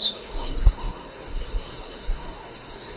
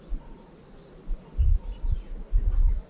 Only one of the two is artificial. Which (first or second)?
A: first